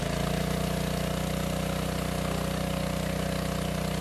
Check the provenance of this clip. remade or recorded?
recorded